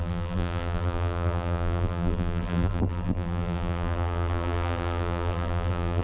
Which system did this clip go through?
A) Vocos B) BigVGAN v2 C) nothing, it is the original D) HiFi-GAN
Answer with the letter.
B